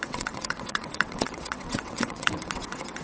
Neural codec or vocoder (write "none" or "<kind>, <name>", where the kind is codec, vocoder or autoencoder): vocoder, WaveNeXt